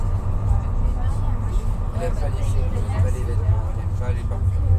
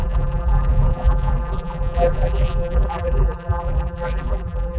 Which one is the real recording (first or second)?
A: first